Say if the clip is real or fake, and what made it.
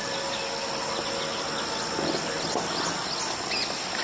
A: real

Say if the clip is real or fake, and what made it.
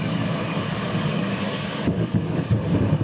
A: fake, codec, DAC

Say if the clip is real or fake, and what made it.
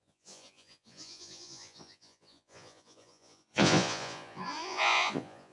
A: fake, vocoder, Vocos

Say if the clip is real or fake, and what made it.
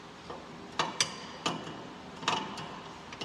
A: real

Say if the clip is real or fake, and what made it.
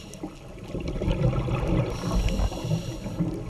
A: real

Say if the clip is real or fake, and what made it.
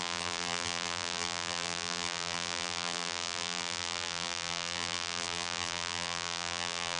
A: fake, vocoder, BigVGAN v2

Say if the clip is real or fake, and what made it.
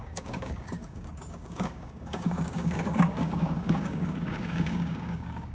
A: fake, codec, DAC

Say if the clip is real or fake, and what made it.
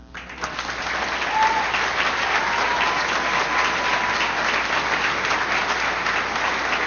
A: real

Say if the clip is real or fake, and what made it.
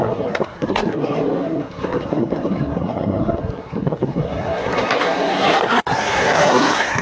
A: fake, codec, SNAC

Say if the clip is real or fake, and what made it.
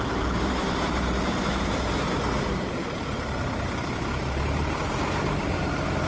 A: fake, vocoder, BigVGAN v2